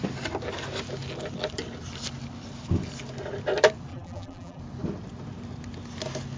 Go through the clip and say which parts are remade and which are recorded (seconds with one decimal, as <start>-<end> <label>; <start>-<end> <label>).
0.0-3.9 recorded; 3.9-4.6 remade; 4.6-6.4 recorded